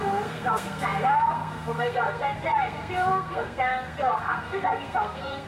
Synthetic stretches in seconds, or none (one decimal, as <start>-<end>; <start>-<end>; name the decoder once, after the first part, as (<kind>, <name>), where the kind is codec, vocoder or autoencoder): 0.0-5.5 (codec, SNAC)